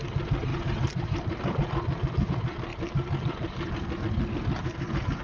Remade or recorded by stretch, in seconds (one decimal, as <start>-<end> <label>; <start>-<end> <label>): 0.0-5.2 recorded